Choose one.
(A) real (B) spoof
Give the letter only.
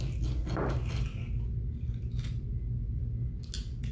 A